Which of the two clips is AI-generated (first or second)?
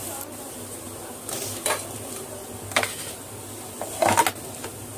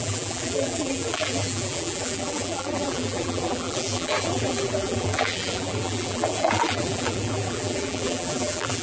second